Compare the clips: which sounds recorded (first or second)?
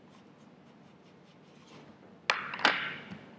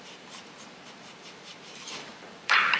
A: first